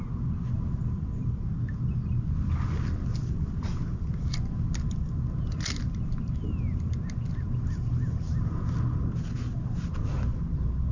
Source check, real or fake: real